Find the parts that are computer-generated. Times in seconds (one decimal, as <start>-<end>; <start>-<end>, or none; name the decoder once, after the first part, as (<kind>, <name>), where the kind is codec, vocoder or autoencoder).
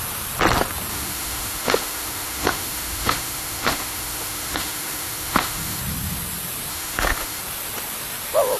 0.9-5.8 (autoencoder, DAC-VAE); 6.7-7.4